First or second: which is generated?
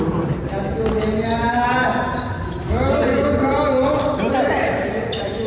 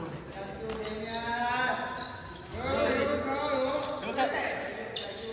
first